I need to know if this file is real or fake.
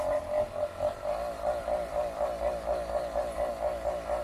real